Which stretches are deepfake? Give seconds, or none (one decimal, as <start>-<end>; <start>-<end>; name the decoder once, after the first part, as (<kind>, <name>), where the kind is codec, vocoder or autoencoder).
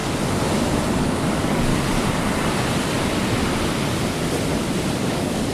1.0-1.7 (codec, DAC); 5.0-5.5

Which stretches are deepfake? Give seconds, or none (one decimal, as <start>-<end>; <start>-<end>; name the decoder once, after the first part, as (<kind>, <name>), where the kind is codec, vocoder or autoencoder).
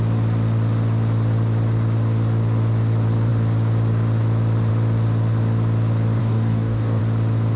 6.2-7.0 (codec, DAC)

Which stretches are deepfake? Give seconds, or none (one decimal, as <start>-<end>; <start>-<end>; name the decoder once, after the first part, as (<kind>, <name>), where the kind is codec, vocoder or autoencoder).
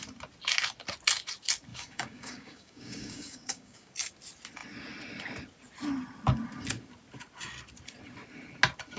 1.7-3.9 (codec, DAC)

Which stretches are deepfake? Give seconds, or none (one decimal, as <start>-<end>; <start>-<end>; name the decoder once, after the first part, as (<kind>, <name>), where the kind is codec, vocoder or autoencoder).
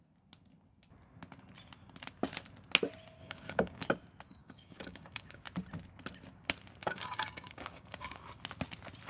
3.2-3.9 (codec, DAC); 4.4-5.4; 6.8-8.2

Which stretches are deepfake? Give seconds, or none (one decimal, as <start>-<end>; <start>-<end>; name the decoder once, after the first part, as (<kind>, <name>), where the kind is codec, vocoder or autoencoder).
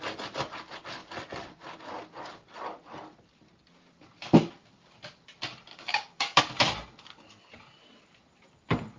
5.7-6.4 (codec, DAC)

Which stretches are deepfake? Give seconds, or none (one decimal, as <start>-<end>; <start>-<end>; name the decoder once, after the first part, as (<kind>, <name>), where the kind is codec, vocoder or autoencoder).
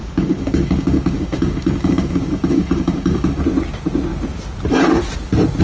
0.0-3.4 (codec, DAC)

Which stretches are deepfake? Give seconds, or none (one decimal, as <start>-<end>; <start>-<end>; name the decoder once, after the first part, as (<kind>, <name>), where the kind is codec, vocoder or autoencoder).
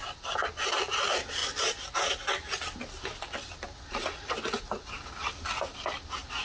none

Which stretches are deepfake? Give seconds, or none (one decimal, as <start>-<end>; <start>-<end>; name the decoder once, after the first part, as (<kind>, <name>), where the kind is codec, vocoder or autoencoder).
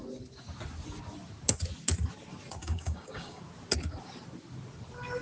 2.6-3.4 (codec, DAC)